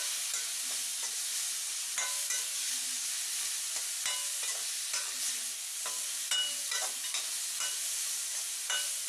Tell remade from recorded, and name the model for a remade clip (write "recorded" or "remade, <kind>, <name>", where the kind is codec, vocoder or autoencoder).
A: recorded